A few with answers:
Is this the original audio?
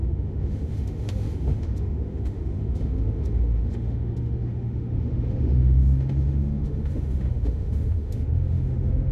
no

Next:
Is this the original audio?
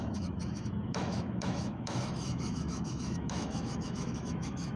no